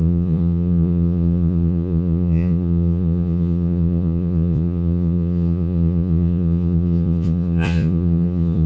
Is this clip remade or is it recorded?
remade